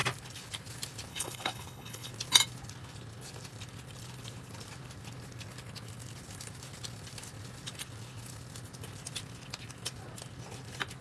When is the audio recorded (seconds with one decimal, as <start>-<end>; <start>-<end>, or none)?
0.0-1.1; 2.1-11.0